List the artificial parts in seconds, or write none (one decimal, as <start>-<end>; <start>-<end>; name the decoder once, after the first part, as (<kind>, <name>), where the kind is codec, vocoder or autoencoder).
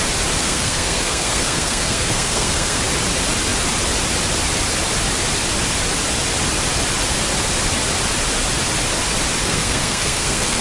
0.4-2.8 (codec, SNAC); 9.4-10.6